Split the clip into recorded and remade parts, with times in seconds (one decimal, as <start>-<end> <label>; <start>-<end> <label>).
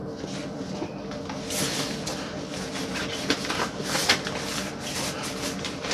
0.0-5.9 recorded